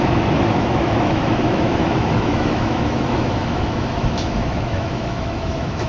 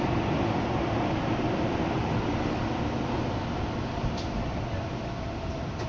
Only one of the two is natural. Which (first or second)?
second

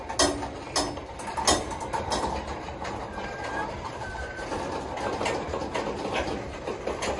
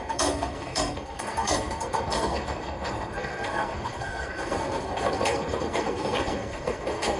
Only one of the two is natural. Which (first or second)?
first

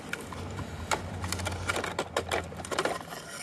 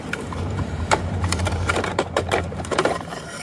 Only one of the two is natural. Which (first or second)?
first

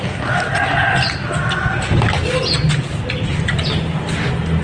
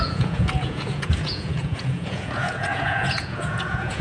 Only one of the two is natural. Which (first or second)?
first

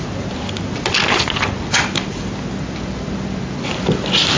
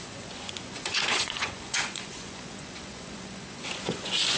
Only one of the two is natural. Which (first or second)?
first